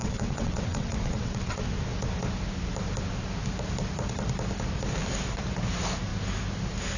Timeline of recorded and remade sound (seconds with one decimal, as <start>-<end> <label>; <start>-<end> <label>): 0.0-1.6 remade; 1.6-7.0 recorded